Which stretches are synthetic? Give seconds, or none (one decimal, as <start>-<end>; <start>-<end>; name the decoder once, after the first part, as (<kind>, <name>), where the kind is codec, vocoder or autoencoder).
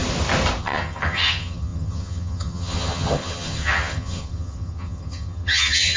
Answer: 0.6-6.0 (vocoder, HiFi-GAN)